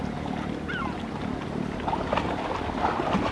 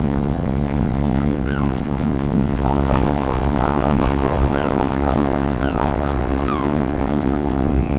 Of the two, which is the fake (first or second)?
second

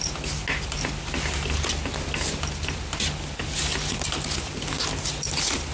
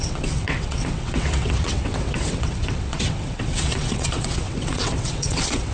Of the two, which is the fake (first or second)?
second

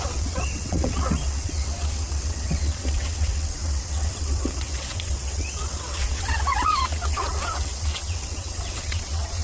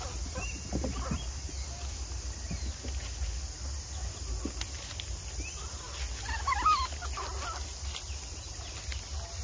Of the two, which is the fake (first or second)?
first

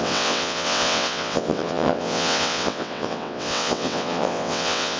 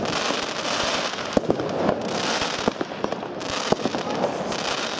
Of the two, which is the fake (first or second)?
first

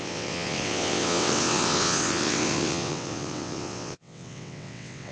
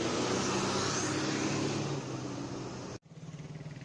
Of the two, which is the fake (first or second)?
first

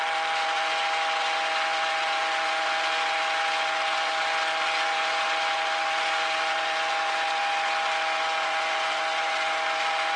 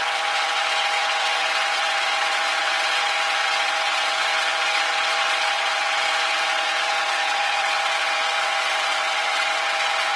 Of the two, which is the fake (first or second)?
second